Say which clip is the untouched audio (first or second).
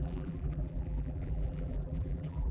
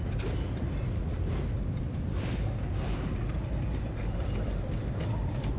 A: second